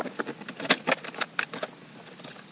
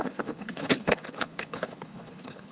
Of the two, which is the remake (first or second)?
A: second